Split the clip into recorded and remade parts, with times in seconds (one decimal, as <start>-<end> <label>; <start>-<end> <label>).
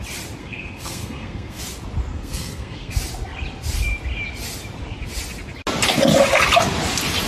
0.0-0.4 recorded; 0.4-1.6 remade; 1.6-2.1 recorded; 2.1-2.9 remade; 2.9-7.3 recorded